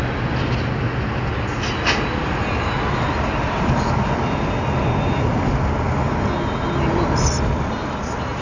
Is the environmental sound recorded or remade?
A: recorded